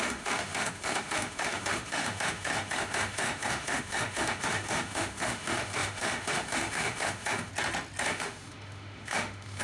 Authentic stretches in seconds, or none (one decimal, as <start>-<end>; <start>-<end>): 7.5-8.0